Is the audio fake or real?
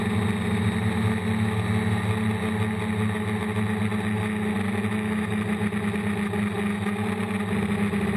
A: real